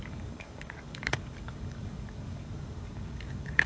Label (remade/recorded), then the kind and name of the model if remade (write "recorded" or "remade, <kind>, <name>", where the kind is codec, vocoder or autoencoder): remade, codec, DAC